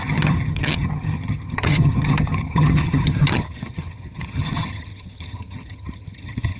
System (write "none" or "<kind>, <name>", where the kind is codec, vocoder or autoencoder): vocoder, HiFi-GAN